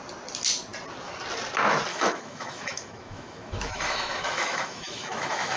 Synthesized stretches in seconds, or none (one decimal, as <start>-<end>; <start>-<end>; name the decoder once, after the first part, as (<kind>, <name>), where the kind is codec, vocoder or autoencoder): 1.9-5.6 (autoencoder, DAC-VAE)